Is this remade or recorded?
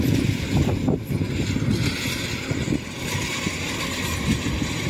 recorded